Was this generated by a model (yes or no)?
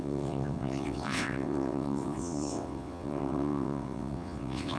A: yes